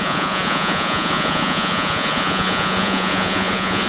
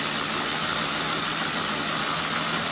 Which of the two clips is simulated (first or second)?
first